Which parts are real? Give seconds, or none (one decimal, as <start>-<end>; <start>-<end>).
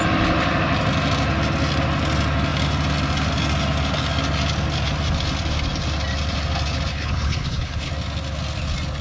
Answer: 0.0-6.9; 7.9-9.0